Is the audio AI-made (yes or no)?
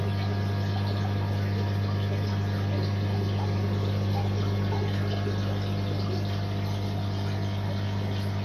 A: no